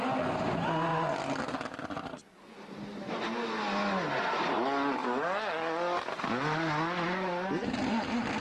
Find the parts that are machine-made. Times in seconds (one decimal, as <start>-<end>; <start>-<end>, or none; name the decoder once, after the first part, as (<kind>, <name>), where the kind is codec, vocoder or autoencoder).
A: none